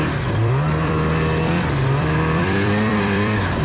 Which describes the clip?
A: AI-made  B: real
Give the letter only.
A